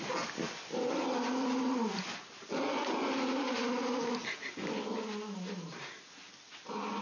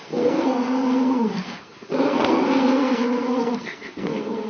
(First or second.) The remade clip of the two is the second